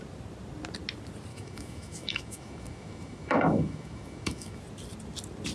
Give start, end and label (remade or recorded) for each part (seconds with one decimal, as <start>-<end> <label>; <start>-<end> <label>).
0.0-1.3 recorded; 1.3-4.6 remade; 4.6-5.5 recorded